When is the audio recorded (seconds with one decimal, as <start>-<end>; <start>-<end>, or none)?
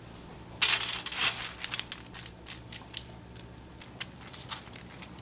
0.0-5.2